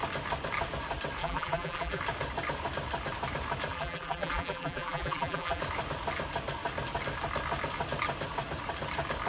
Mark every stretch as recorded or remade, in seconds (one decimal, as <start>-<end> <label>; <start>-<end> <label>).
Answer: 0.0-1.2 recorded; 1.2-2.0 remade; 2.0-3.7 recorded; 3.7-5.6 remade; 5.6-9.3 recorded